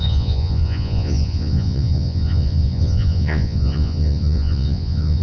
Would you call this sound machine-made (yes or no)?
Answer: yes